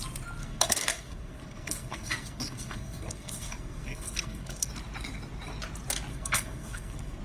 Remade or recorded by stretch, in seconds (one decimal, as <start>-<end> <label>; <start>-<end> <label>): 0.0-0.4 recorded; 0.4-4.7 remade; 4.7-6.1 recorded; 6.1-7.2 remade